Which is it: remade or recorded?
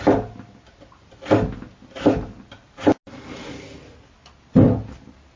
recorded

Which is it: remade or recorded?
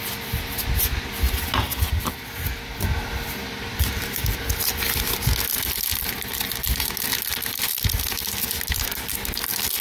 recorded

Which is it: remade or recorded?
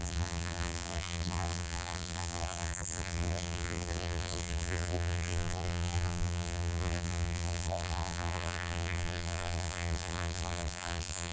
remade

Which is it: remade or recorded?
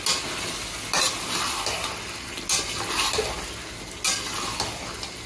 recorded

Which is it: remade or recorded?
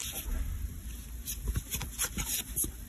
recorded